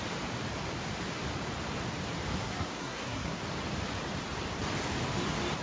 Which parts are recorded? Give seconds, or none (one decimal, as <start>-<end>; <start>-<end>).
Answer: 0.0-2.3; 3.4-5.6